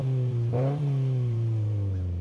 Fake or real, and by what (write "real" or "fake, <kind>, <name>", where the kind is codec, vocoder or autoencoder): fake, vocoder, BigVGAN v2